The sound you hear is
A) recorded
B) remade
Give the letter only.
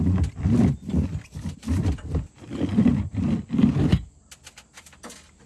A